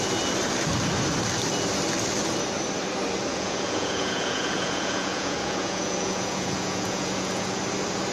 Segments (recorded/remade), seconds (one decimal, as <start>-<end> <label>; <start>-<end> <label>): 0.0-3.3 recorded; 3.3-7.6 remade; 7.6-8.1 recorded